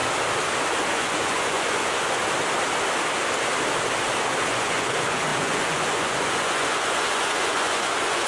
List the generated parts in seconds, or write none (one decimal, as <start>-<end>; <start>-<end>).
0.9-2.2; 4.5-8.3